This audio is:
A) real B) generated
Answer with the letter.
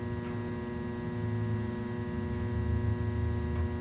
A